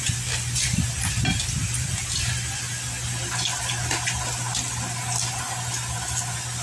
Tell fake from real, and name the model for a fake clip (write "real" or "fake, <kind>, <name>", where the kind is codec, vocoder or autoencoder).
real